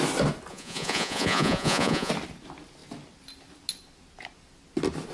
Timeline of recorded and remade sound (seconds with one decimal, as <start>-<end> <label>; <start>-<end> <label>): 0.0-0.5 recorded; 0.5-2.1 remade; 2.1-5.1 recorded